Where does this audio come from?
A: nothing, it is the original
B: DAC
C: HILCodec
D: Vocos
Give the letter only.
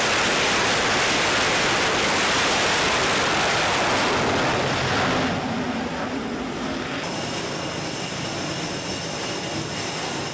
A